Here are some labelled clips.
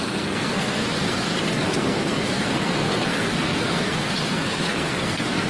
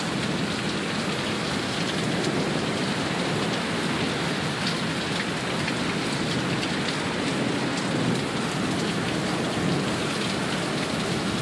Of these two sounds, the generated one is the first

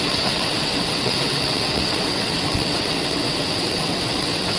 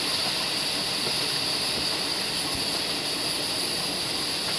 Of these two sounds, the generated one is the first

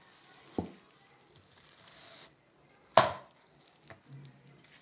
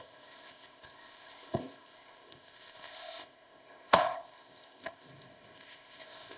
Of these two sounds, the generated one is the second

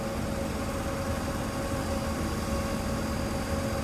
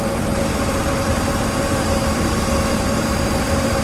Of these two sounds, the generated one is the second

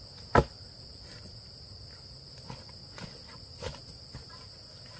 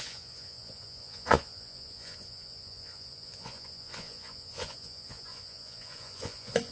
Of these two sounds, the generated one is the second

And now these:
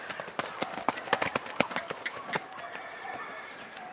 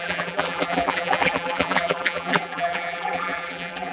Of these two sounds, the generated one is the second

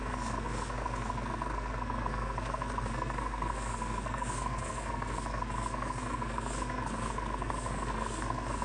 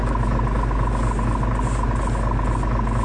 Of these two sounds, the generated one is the first